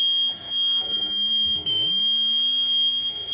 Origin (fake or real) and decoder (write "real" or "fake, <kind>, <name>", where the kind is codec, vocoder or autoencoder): fake, autoencoder, DAC-VAE